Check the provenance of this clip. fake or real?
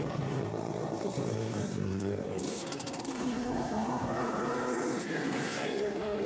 fake